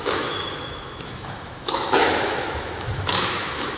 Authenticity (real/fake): fake